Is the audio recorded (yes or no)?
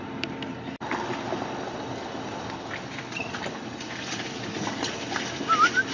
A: yes